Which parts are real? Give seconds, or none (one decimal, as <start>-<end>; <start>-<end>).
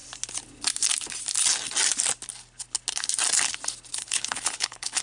0.0-3.9